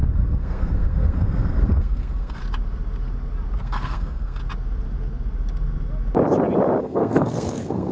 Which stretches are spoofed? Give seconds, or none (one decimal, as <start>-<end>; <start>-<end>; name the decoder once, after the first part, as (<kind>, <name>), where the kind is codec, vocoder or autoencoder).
0.0-2.4 (codec, SNAC); 3.6-4.4; 6.8-7.9